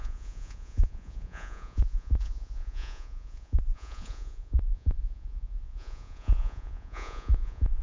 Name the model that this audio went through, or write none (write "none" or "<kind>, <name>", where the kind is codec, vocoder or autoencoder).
vocoder, Vocos